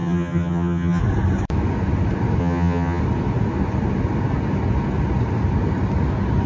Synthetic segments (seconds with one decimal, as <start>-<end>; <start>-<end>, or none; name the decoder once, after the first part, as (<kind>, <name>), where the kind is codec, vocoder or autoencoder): 0.0-1.0 (vocoder, HiFi-GAN); 2.4-3.0